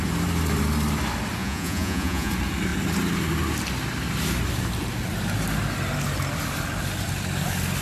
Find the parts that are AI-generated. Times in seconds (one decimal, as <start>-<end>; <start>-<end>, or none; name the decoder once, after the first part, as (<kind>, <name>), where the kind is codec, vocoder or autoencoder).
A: 1.4-2.3 (vocoder, Vocos)